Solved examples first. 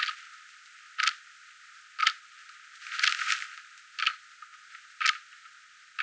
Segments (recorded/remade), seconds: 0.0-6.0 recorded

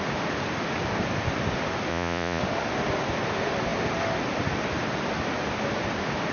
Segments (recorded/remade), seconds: 0.0-1.9 recorded; 1.9-2.4 remade; 2.4-6.3 recorded

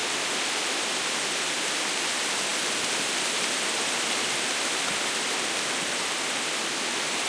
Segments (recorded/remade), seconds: 0.0-7.3 recorded

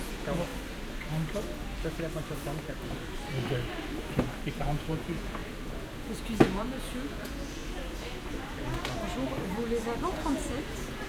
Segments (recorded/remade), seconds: 0.0-0.5 remade; 0.5-4.5 recorded; 4.5-5.4 remade; 5.4-6.0 recorded; 6.0-7.6 remade; 7.6-10.1 recorded; 10.1-11.1 remade